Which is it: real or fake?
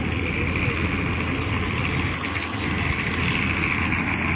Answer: real